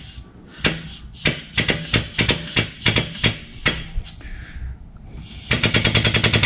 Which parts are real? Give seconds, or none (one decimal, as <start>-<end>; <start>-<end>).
0.0-6.5